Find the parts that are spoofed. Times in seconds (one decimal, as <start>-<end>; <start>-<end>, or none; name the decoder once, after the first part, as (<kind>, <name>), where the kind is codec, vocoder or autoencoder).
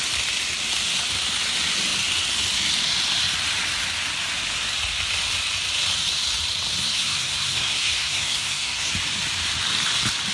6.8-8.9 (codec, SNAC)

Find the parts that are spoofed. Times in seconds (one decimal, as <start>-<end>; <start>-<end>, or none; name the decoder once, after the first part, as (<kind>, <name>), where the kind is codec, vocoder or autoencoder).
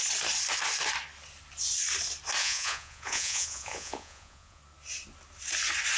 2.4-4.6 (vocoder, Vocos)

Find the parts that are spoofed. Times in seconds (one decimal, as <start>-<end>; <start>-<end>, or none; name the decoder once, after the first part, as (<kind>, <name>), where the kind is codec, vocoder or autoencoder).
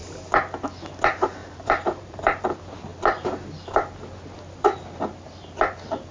1.4-2.5 (vocoder, BigVGAN v2)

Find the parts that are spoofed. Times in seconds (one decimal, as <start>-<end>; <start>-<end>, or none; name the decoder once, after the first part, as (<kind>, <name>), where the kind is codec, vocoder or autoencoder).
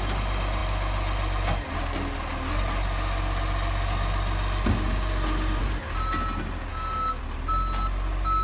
6.7-7.2 (codec, DAC)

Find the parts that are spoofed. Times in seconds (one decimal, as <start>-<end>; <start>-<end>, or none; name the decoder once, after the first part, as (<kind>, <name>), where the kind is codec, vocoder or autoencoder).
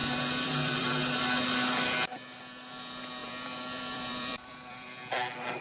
0.0-1.2 (vocoder, BigVGAN v2); 3.2-4.9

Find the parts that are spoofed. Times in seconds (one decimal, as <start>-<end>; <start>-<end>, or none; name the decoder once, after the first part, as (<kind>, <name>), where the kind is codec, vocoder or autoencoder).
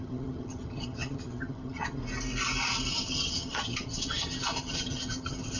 0.0-2.0 (vocoder, HiFi-GAN); 2.9-5.6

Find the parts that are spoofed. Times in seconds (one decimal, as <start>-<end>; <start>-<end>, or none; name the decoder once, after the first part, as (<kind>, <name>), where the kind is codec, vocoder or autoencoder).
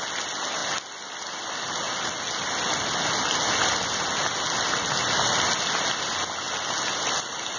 none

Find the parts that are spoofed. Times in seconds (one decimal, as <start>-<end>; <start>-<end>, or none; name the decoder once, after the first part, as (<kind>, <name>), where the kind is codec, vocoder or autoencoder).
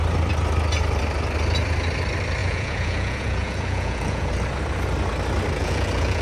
2.4-4.3 (vocoder, Vocos); 5.6-6.2